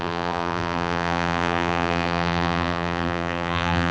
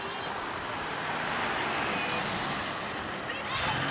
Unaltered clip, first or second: second